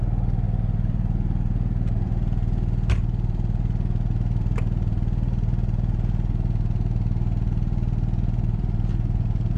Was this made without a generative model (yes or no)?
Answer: no